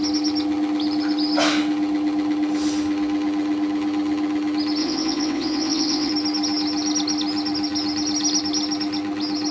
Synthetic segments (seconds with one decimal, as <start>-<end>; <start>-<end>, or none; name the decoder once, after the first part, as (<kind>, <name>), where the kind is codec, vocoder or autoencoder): 4.8-6.1 (vocoder, WaveNeXt)